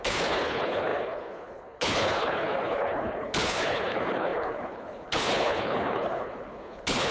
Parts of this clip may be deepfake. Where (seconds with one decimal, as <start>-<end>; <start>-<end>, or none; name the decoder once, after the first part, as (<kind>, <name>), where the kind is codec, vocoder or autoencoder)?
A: 0.0-7.1 (codec, HILCodec)